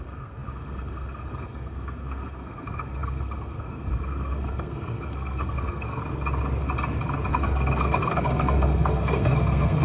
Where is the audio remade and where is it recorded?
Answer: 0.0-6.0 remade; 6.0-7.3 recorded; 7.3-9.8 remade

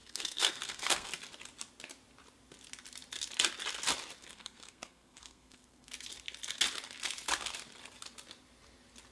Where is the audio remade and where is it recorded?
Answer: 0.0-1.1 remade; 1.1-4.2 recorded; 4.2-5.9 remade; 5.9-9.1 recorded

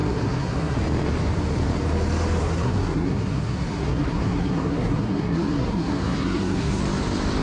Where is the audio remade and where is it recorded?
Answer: 0.0-0.8 remade; 0.8-2.4 recorded; 2.4-6.8 remade; 6.8-7.4 recorded

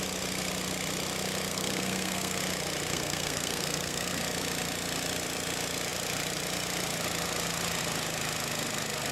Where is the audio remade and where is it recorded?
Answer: 0.0-1.5 recorded; 1.5-2.4 remade; 2.4-2.9 recorded; 2.9-4.2 remade; 4.2-9.1 recorded

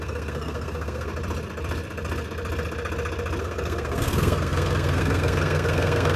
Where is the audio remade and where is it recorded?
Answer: 0.0-1.1 remade; 1.1-3.4 recorded; 3.4-6.2 remade

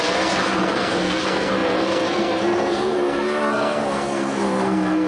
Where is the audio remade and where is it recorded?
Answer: 0.0-5.1 remade